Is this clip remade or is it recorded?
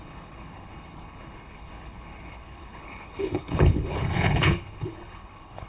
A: remade